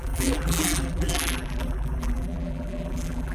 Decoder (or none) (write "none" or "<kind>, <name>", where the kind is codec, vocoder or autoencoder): vocoder, BigVGAN v2